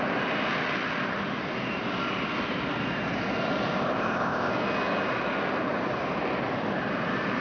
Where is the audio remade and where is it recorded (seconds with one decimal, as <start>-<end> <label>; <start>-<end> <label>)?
0.0-3.8 recorded; 3.8-4.5 remade; 4.5-7.4 recorded

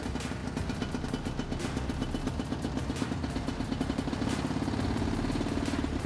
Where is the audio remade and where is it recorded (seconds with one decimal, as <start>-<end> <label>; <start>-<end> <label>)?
0.0-6.1 recorded

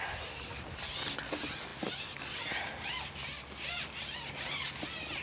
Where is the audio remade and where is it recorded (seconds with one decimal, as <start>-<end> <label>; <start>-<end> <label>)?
0.0-5.2 recorded